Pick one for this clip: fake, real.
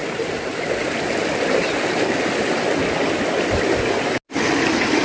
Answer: real